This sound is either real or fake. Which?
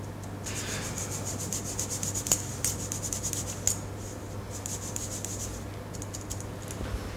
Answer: real